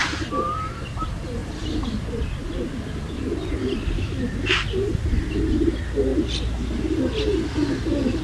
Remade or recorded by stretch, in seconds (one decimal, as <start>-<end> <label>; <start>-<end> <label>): 0.0-6.1 recorded; 6.1-7.0 remade; 7.0-8.2 recorded